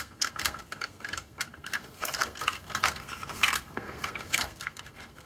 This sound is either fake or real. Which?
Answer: fake